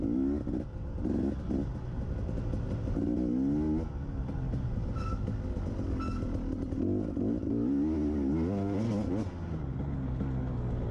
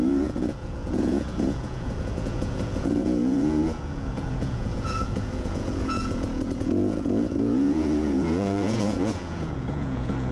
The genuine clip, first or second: first